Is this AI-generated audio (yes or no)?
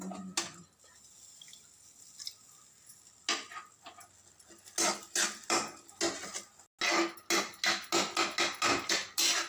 no